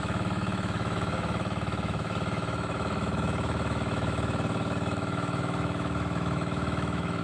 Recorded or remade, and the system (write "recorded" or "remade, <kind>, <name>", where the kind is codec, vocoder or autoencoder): remade, autoencoder, DAC-VAE